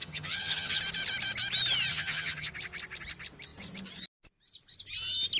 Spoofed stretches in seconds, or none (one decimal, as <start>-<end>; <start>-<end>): 0.0-0.8; 1.9-2.5